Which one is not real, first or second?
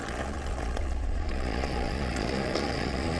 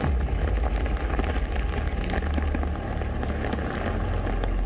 first